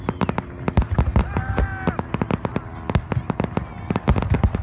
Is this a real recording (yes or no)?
yes